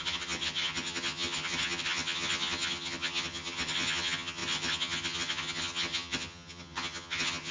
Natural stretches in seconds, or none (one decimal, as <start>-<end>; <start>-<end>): none